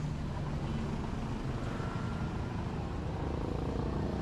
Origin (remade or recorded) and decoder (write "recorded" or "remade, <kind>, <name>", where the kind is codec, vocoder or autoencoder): recorded